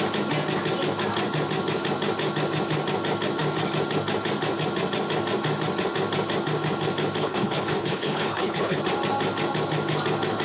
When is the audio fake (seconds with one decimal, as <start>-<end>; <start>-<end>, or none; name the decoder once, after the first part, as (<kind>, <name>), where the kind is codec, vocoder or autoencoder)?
7.2-8.8 (codec, HILCodec)